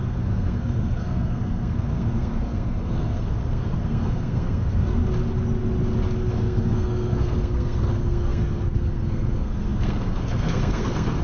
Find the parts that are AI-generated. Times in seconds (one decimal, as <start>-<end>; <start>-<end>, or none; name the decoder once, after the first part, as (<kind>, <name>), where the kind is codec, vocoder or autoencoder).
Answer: 0.0-5.0 (codec, SNAC); 6.3-11.2